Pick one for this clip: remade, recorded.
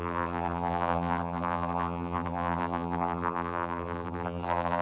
remade